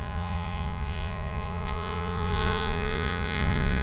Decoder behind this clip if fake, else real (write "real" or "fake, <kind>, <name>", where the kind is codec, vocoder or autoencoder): fake, vocoder, Vocos